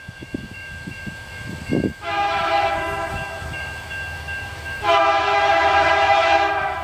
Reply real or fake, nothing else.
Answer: fake